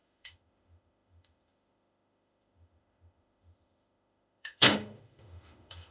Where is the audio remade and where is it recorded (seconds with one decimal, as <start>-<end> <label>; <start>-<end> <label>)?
0.0-5.9 remade